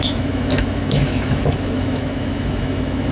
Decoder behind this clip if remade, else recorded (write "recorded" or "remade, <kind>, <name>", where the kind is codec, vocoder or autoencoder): remade, autoencoder, DAC-VAE